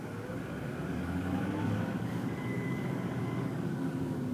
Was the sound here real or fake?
fake